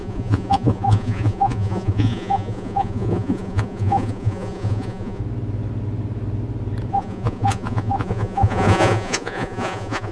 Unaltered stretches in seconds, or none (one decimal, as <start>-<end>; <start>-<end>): 5.2-6.9